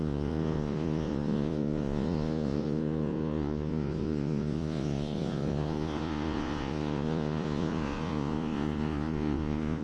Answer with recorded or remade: remade